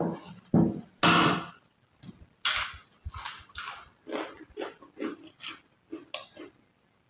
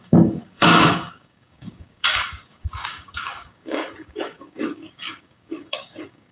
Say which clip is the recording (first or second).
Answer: first